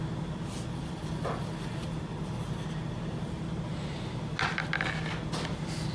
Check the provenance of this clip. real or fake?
real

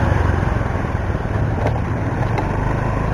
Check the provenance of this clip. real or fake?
fake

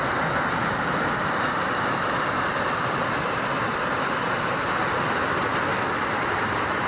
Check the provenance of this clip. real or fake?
fake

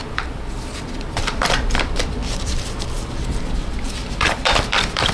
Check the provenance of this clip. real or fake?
fake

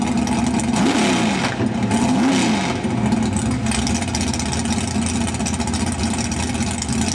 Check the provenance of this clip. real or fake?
real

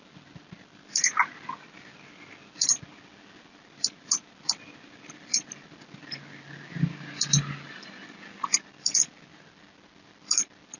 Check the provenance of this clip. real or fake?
real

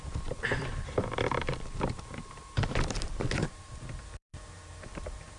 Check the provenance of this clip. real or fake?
fake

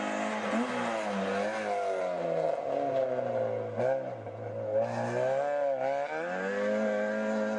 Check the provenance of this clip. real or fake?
real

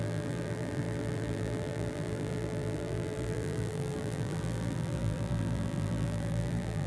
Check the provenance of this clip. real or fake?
fake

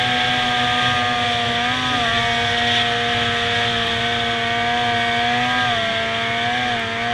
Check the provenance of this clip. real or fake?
real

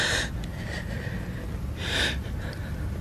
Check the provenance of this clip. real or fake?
fake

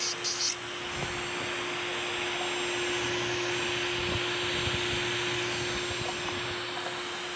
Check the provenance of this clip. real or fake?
real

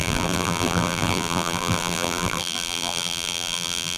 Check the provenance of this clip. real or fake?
fake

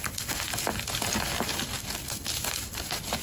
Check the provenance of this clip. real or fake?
fake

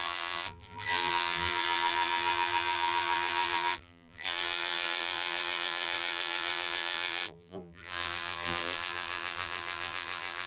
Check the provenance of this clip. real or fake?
fake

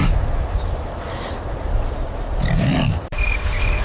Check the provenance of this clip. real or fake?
fake